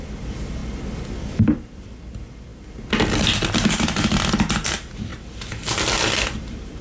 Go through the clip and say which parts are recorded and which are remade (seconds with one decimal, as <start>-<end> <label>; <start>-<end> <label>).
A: 0.0-0.6 remade; 0.6-1.2 recorded; 1.2-2.5 remade; 2.5-3.7 recorded; 3.7-5.1 remade; 5.1-6.2 recorded; 6.2-6.8 remade